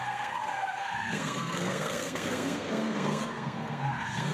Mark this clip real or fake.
fake